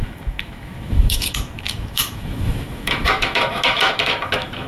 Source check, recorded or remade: remade